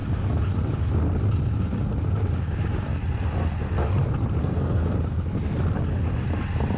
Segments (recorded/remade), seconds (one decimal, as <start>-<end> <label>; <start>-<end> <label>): 0.0-4.4 recorded; 4.4-4.9 remade; 4.9-6.8 recorded